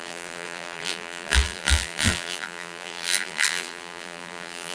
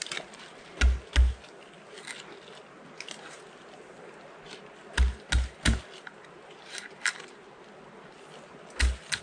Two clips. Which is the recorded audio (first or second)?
second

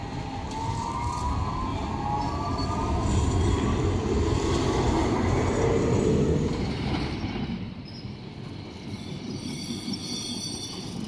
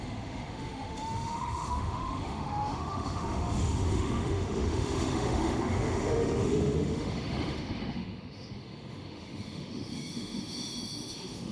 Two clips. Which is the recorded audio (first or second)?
first